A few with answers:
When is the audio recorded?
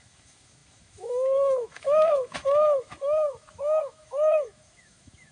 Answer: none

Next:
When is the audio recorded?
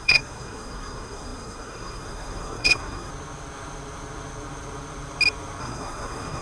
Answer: 3.1-5.6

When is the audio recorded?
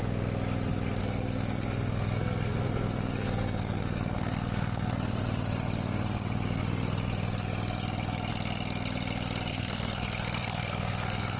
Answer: 0.0-1.0; 5.2-9.5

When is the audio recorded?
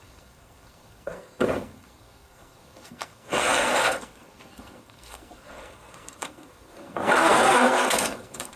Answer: none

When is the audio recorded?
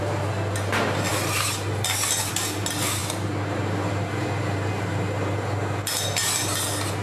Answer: 0.0-7.0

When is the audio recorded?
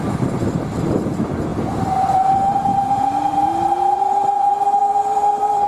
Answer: 0.0-2.7; 4.0-4.8